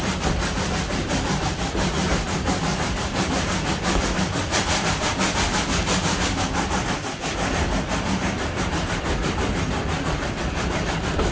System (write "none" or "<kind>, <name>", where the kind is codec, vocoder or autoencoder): vocoder, BigVGAN v2